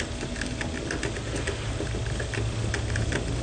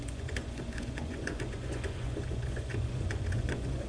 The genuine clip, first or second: first